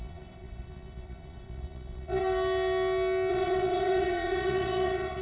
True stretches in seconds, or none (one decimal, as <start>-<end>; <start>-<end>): 2.2-3.3